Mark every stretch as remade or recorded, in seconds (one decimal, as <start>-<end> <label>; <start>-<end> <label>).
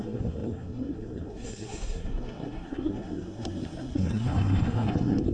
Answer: 0.0-5.3 remade